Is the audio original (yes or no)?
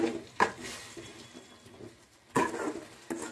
yes